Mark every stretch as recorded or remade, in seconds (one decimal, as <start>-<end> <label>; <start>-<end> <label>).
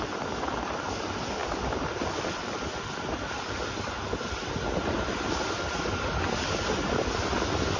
0.0-1.4 recorded; 1.4-2.4 remade; 2.4-7.8 recorded